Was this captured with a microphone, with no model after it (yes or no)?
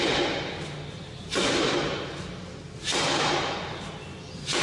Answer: yes